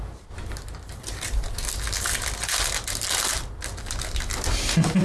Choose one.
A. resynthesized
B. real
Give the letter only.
B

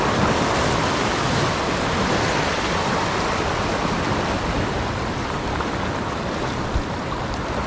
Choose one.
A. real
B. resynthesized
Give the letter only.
A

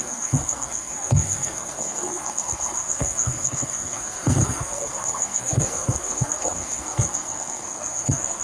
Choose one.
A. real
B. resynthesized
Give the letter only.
B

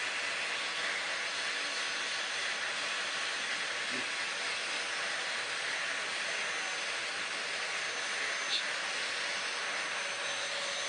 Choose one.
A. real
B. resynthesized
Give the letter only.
A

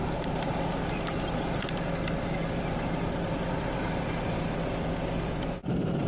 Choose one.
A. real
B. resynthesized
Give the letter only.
B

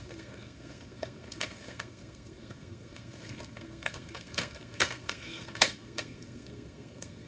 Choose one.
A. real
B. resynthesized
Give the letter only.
B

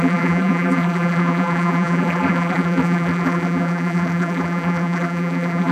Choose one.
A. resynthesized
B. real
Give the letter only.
A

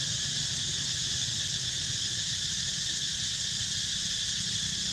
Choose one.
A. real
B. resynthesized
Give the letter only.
B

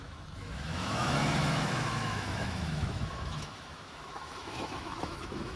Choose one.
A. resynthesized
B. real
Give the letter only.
A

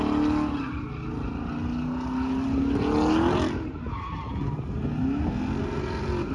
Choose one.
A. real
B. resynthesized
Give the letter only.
A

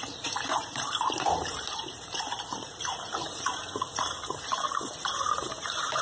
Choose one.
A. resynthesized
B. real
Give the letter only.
A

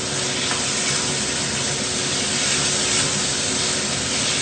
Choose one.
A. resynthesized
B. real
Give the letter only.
B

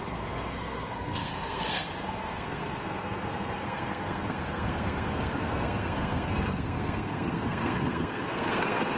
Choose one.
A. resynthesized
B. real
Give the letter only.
A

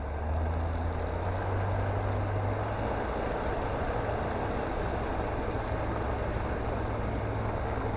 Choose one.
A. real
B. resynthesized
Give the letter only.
A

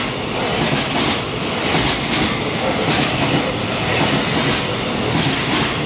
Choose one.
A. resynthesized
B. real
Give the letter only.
B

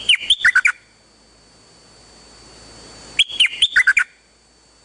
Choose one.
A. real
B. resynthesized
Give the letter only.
A